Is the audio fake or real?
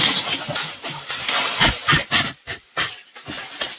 real